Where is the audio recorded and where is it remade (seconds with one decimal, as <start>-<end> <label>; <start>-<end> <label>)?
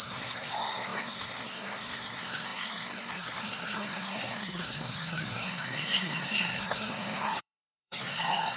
0.0-8.6 remade